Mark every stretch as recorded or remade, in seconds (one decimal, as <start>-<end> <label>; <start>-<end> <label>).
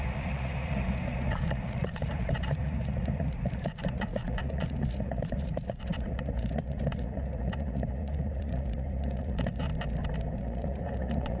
0.0-9.7 remade; 9.7-10.4 recorded; 10.4-11.4 remade